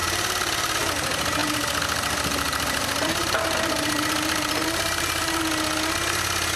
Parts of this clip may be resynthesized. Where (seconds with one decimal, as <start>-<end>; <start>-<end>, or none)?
0.0-0.9; 1.4-5.4